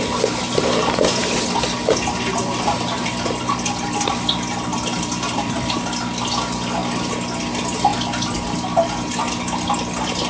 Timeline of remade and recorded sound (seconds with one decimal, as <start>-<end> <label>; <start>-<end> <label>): 0.0-10.3 recorded